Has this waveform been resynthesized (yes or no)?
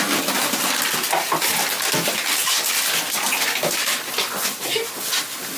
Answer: no